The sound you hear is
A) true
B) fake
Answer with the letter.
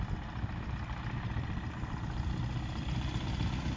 A